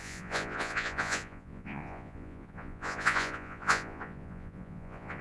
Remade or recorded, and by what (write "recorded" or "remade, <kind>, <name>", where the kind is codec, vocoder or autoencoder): remade, vocoder, Vocos